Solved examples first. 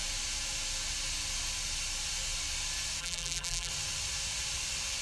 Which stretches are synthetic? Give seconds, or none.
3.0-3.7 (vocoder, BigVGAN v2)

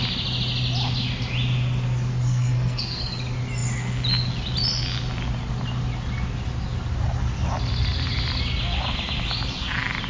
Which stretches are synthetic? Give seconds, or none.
2.1-3.0 (codec, SNAC)

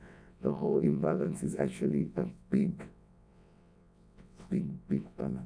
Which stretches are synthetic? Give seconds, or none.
0.0-5.5 (vocoder, WaveNeXt)